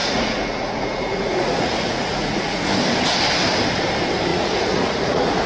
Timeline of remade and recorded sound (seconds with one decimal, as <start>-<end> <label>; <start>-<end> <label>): 0.0-2.6 remade; 2.6-4.3 recorded; 4.3-5.5 remade